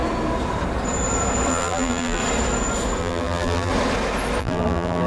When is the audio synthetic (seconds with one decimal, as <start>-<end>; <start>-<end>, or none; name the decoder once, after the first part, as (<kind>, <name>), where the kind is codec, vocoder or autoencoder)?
1.5-2.2 (vocoder, BigVGAN v2); 3.0-3.7; 4.4-5.1